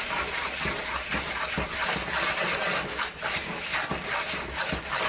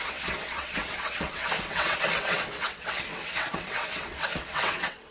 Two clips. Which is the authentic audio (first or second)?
first